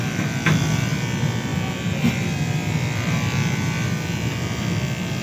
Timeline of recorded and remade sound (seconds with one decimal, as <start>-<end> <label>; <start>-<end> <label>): 0.0-5.2 recorded